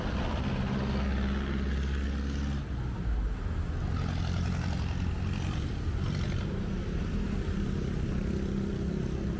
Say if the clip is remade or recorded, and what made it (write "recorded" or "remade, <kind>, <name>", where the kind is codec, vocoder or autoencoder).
recorded